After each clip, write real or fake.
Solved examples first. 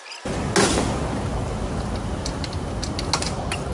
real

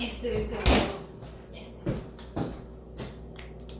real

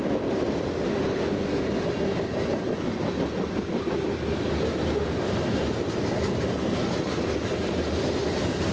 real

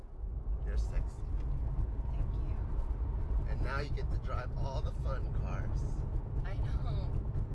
real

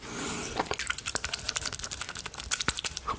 real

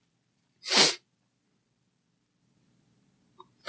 real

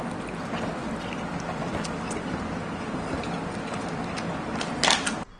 real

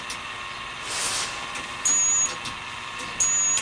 real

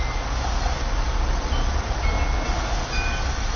real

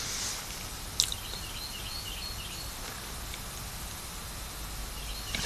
real